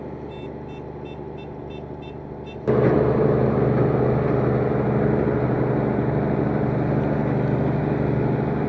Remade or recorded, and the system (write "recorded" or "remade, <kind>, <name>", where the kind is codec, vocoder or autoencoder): recorded